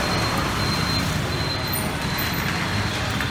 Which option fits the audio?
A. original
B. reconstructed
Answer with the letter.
A